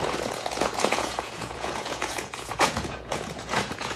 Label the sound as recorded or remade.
remade